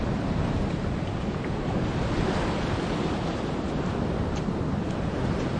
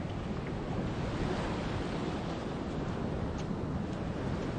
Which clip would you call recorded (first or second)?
second